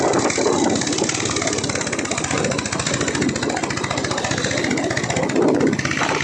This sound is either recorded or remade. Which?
remade